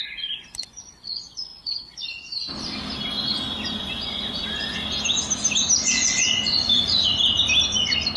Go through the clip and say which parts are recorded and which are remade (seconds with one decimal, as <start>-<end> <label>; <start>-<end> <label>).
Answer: 0.0-1.5 remade; 1.5-3.7 recorded; 3.7-4.4 remade; 4.4-5.8 recorded; 5.8-7.1 remade; 7.1-8.2 recorded